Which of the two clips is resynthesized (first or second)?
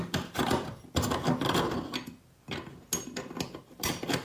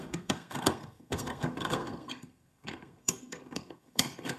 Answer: second